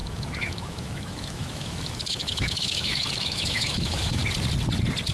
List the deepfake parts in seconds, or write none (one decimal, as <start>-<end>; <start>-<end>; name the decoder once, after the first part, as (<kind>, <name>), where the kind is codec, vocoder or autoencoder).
0.0-4.2 (autoencoder, DAC-VAE)